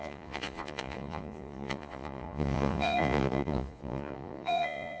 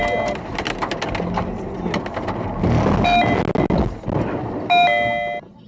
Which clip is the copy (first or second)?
first